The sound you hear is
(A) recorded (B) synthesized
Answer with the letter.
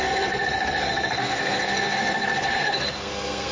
B